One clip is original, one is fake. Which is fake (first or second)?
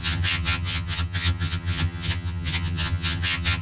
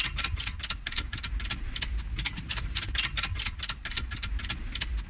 first